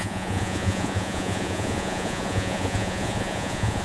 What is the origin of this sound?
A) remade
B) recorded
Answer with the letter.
A